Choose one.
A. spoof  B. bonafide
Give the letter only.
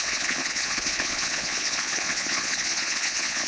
A